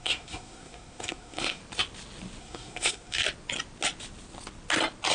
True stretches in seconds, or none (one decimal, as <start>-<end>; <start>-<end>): 1.6-2.4; 3.2-5.1